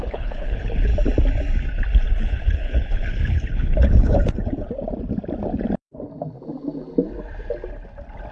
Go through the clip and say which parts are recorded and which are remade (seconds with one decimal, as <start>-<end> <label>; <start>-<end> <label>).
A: 0.0-0.9 remade; 0.9-2.2 recorded; 2.2-4.2 remade; 4.2-8.3 recorded